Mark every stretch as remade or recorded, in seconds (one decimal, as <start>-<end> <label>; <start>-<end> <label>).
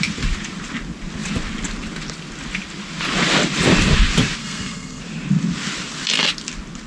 0.0-4.4 recorded; 4.4-5.0 remade; 5.0-6.9 recorded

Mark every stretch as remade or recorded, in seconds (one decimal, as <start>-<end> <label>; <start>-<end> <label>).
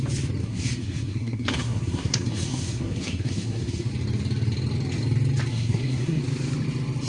0.0-0.4 recorded; 0.4-3.9 remade; 3.9-5.5 recorded; 5.5-6.2 remade; 6.2-7.1 recorded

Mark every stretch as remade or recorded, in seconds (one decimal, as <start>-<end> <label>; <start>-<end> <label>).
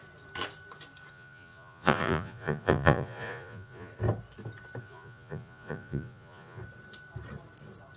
0.0-1.1 recorded; 1.1-3.9 remade; 3.9-4.8 recorded; 4.8-6.6 remade; 6.6-8.0 recorded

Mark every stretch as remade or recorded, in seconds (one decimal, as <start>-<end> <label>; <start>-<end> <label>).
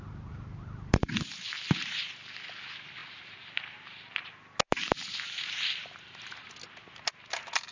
0.0-3.0 recorded; 3.0-4.3 remade; 4.3-5.8 recorded; 5.8-6.5 remade; 6.5-7.7 recorded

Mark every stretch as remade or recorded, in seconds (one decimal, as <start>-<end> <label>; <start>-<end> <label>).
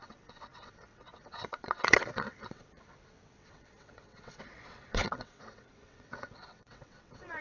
0.0-7.4 remade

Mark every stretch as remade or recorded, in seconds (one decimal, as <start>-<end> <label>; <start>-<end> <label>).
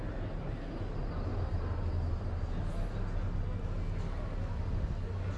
0.0-5.4 recorded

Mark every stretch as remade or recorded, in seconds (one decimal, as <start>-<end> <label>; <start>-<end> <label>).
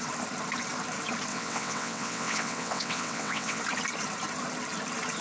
0.0-1.3 recorded; 1.3-3.6 remade; 3.6-5.2 recorded